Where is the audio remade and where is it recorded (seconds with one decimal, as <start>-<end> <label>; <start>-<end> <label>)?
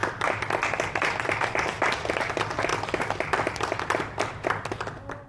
0.0-5.3 recorded